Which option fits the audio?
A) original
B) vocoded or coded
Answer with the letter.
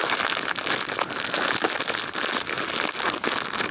A